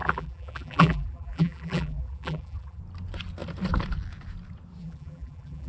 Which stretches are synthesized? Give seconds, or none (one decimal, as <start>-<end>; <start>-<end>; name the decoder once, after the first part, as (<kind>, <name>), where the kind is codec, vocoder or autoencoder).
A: 0.0-2.8 (vocoder, BigVGAN v2); 4.8-5.7